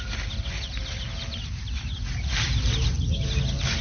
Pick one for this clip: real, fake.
real